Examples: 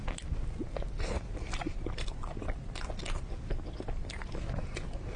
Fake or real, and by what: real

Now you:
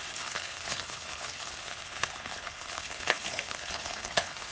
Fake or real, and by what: fake, codec, HILCodec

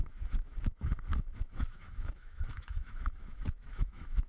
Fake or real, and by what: fake, autoencoder, DAC-VAE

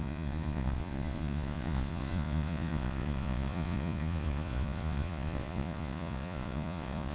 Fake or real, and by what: fake, vocoder, Vocos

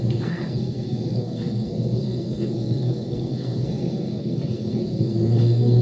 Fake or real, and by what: fake, codec, SNAC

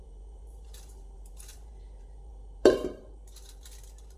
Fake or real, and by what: fake, vocoder, BigVGAN v2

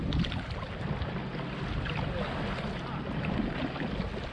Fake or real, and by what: real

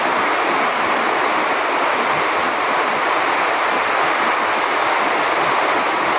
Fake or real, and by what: real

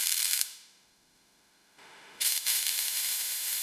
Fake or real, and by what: fake, autoencoder, DAC-VAE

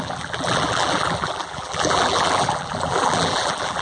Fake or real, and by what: fake, vocoder, BigVGAN v2